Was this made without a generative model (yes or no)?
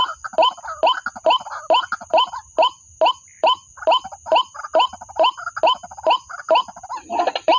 yes